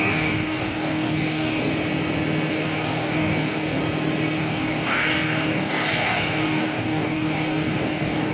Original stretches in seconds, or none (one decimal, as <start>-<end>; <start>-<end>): 1.7-2.5; 3.8-4.4